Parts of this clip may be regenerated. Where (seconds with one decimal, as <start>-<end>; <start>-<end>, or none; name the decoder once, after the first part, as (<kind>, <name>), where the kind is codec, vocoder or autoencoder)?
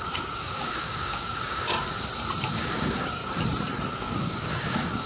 0.0-1.7 (codec, DAC); 2.5-3.2; 4.0-5.1